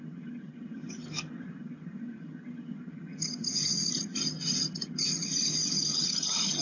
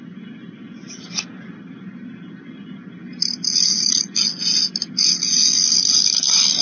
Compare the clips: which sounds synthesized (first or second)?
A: first